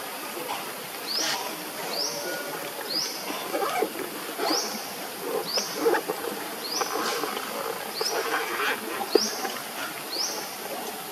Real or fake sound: fake